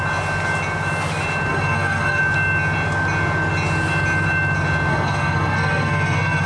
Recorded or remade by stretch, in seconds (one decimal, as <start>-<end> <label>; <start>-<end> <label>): 0.0-1.5 recorded; 1.5-2.2 remade; 2.2-4.9 recorded; 4.9-6.5 remade